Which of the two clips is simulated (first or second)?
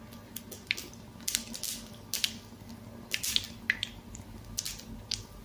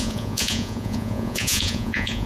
second